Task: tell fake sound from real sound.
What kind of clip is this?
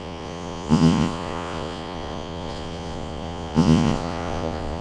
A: fake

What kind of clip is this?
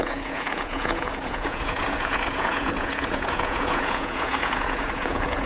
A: fake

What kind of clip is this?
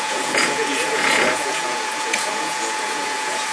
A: fake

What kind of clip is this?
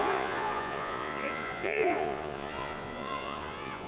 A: fake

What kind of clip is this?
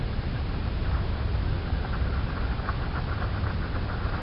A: real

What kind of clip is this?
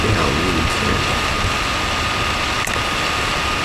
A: real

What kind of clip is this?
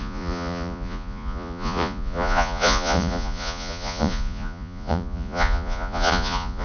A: fake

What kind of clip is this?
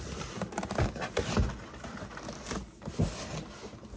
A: real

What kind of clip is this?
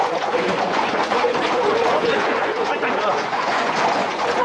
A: fake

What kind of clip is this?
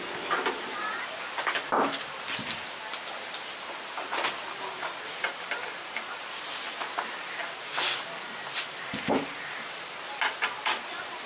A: real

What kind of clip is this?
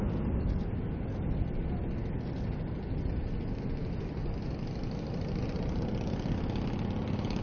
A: real